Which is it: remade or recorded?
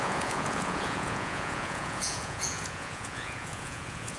remade